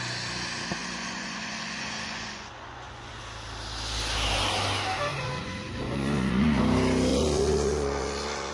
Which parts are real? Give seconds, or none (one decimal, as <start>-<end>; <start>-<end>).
0.0-0.8; 3.2-5.1; 6.6-7.1